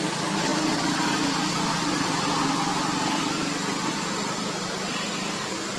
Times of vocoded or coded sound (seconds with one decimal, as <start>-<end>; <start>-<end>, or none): none